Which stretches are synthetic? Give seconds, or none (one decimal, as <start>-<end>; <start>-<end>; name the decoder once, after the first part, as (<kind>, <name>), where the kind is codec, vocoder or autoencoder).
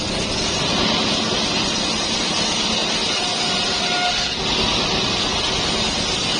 none